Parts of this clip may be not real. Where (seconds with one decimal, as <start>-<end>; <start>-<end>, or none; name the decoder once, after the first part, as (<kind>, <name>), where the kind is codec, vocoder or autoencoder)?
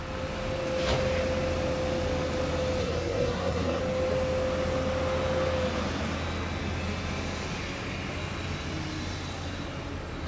2.8-3.8 (codec, SNAC)